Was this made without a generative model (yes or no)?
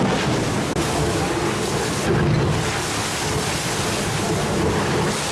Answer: yes